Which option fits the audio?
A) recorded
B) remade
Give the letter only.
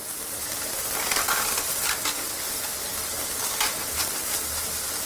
A